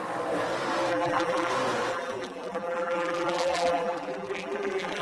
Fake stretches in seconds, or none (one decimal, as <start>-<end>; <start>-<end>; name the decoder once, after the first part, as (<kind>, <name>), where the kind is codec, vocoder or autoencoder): 0.9-1.5 (vocoder, BigVGAN v2); 1.9-5.0